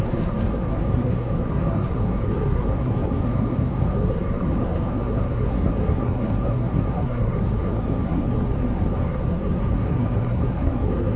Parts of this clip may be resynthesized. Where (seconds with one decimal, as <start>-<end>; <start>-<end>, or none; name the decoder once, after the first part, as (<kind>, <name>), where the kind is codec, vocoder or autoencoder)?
0.0-11.2 (codec, SNAC)